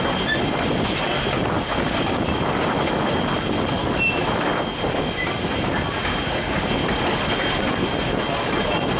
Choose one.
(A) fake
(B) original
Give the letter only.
B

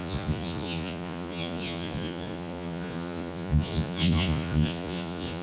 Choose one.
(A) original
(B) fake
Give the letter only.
B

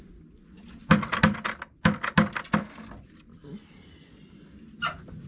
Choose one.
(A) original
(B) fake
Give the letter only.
A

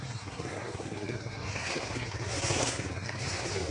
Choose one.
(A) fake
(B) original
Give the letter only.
A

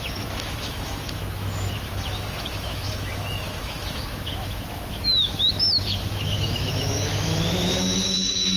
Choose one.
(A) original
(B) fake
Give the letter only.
B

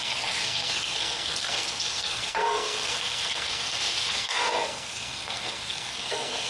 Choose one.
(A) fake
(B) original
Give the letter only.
A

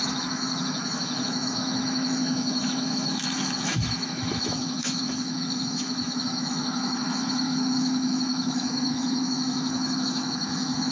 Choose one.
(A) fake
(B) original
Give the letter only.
A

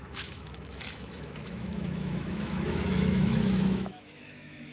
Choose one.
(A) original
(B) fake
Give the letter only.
B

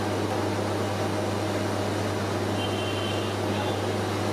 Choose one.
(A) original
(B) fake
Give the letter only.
A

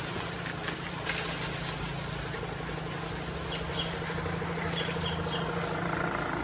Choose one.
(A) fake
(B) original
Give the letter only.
B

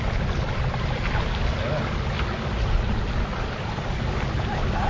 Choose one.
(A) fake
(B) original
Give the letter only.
B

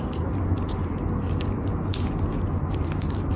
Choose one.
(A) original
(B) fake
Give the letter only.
A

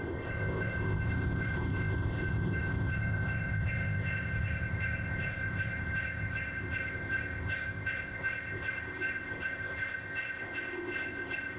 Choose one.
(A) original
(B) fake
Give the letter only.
B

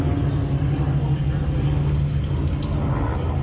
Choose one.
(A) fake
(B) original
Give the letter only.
B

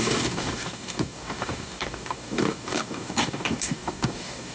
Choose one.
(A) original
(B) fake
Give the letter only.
B